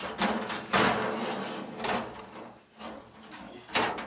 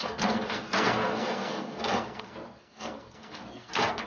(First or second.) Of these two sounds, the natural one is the first